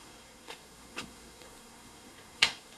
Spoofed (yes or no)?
yes